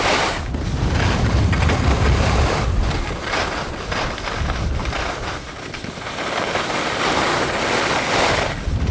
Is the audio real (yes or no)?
yes